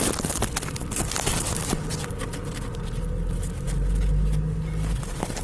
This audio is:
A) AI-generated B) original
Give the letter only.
B